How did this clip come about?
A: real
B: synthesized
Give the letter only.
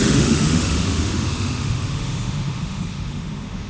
B